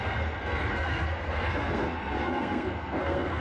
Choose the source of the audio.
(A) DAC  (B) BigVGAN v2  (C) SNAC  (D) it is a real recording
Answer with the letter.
C